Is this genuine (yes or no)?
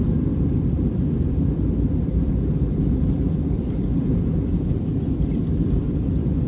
no